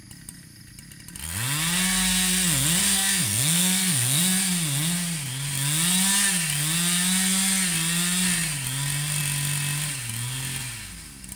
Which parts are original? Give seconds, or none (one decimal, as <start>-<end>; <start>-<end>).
0.0-2.8; 4.2-11.4